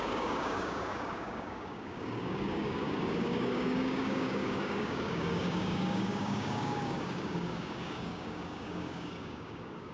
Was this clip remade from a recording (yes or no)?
yes